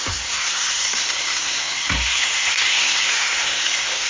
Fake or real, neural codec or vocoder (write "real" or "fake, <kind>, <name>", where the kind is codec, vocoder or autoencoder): fake, codec, SNAC